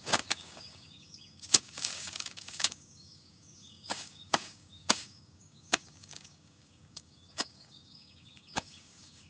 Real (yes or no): no